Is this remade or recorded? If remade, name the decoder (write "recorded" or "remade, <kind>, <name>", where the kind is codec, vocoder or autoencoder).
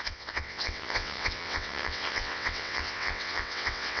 remade, vocoder, WaveNeXt